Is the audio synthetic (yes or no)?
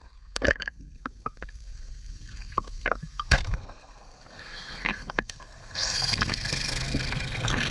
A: yes